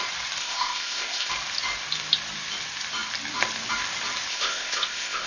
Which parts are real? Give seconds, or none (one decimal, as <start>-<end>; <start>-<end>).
0.0-0.4; 1.3-4.3